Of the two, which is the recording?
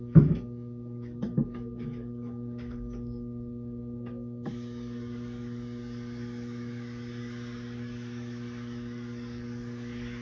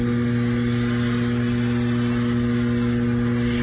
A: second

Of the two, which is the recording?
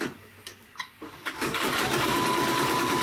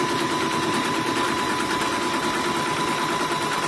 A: second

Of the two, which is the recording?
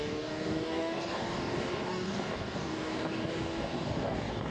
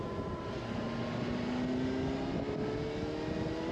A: second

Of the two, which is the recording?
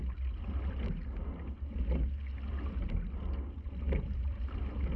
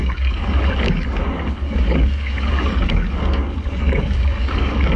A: first